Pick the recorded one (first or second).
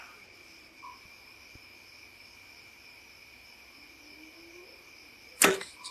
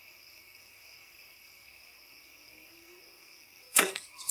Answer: first